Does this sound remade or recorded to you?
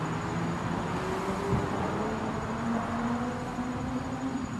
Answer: recorded